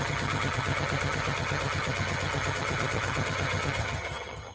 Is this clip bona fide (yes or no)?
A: no